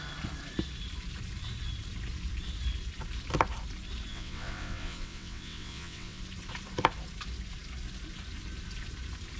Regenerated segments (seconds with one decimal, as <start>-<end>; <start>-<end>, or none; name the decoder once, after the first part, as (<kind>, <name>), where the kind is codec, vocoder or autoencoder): 4.1-6.2 (vocoder, WaveNeXt)